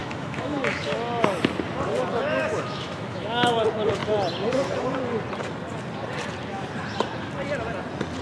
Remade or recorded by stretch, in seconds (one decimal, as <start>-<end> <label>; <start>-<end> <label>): 0.0-0.9 remade; 0.9-2.1 recorded; 2.1-3.6 remade; 3.6-8.2 recorded